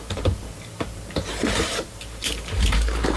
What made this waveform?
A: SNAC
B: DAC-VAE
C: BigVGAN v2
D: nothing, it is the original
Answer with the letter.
C